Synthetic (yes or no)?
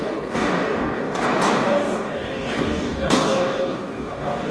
yes